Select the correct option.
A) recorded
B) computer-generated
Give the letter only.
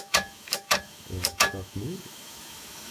B